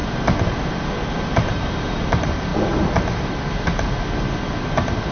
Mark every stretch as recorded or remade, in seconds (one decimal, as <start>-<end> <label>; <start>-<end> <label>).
0.0-2.1 recorded; 2.1-2.5 remade; 2.5-5.1 recorded